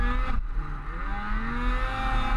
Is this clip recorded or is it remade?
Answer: recorded